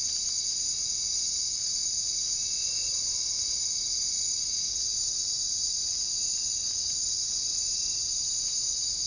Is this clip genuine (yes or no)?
yes